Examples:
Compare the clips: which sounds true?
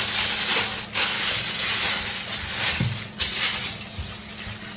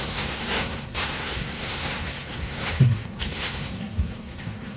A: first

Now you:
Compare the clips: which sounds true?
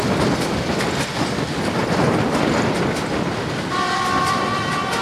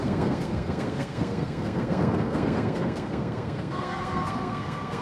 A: first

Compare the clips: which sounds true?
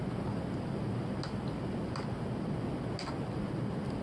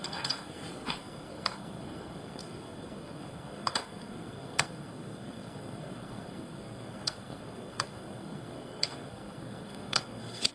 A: first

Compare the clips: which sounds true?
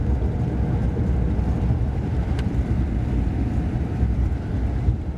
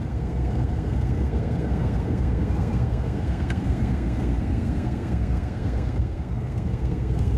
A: first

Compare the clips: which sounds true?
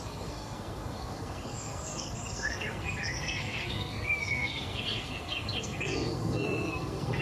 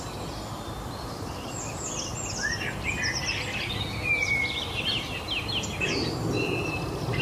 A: second